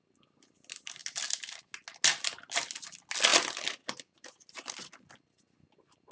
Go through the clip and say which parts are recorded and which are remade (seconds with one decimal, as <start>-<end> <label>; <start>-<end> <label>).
0.0-6.1 recorded